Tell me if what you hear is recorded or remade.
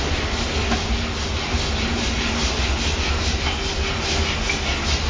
recorded